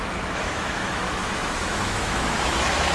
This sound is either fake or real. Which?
fake